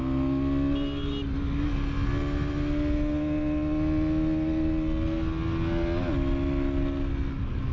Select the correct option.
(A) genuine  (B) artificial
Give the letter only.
A